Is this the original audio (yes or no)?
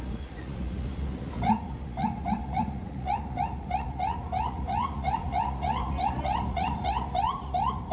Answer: no